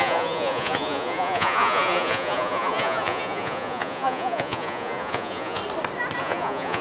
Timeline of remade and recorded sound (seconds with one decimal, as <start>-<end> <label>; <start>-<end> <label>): 0.0-5.6 remade; 5.6-6.2 recorded; 6.2-6.8 remade